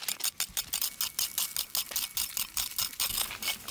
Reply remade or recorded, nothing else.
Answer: recorded